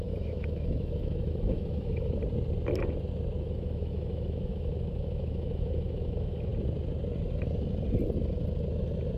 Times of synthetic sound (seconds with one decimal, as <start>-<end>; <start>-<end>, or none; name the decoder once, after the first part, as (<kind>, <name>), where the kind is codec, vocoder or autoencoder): 0.0-2.2 (autoencoder, DAC-VAE); 3.4-6.5